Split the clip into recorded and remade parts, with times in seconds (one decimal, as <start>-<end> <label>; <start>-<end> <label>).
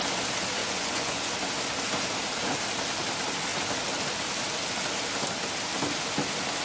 0.0-0.6 recorded; 0.6-1.3 remade; 1.3-6.6 recorded